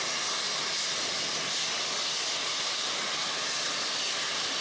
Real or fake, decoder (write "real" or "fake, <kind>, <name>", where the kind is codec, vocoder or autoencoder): real